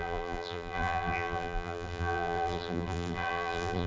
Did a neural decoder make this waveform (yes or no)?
yes